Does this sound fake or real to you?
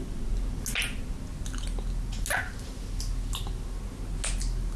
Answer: real